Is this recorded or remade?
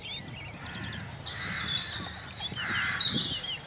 remade